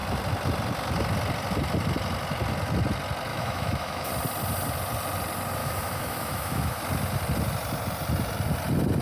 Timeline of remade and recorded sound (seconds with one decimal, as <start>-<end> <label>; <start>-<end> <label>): 0.0-3.3 recorded; 3.3-4.1 remade; 4.1-5.6 recorded; 5.6-6.8 remade; 6.8-9.0 recorded